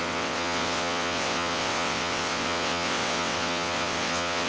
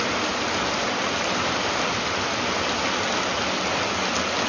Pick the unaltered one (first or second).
second